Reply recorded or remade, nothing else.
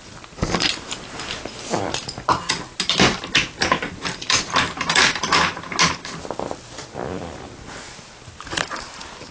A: recorded